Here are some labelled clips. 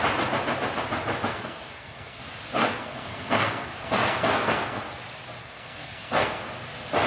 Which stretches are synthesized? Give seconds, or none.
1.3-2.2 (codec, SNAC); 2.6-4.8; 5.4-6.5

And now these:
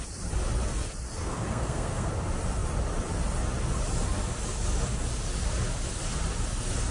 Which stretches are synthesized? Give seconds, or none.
1.2-2.1 (codec, SNAC)

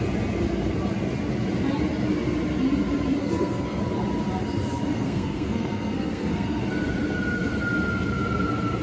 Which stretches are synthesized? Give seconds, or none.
3.2-3.8 (codec, SNAC); 4.9-6.6

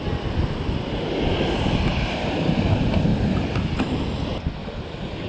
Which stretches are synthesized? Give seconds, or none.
none